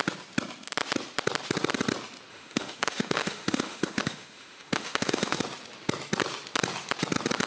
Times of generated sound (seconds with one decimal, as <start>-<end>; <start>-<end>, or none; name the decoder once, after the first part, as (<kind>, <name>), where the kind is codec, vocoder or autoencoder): 2.3-5.4 (autoencoder, DAC-VAE)